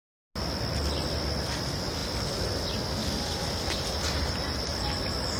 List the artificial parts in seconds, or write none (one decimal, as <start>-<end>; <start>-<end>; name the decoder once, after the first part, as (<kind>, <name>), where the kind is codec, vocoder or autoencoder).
none